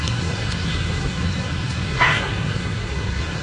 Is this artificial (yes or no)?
yes